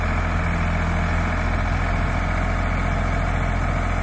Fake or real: real